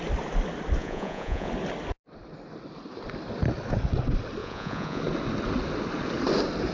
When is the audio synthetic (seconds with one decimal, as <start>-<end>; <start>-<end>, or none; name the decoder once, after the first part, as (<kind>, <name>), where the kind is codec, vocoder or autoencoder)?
0.8-1.5 (vocoder, Vocos); 4.4-5.0

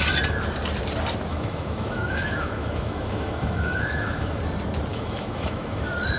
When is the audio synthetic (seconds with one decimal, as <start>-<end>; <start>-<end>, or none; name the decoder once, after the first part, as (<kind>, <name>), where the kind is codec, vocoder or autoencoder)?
1.3-4.4 (autoencoder, DAC-VAE); 4.9-5.8

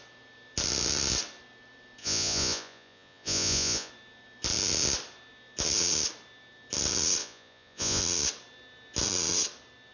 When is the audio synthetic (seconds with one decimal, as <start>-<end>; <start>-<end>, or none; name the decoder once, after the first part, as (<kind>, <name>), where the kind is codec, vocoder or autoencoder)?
2.0-3.9 (vocoder, Vocos); 7.2-8.0

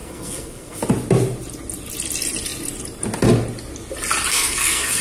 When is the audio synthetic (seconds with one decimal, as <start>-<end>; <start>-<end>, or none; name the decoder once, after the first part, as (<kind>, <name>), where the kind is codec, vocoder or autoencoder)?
0.0-0.8 (codec, SNAC); 4.3-5.0